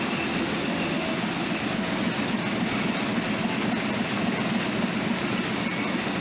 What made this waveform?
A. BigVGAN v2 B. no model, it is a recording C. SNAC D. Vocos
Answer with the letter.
B